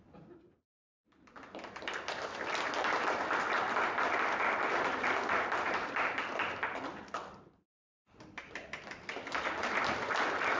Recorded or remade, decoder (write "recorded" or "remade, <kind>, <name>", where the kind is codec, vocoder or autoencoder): remade, vocoder, BigVGAN v2